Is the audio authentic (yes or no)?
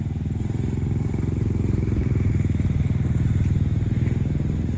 yes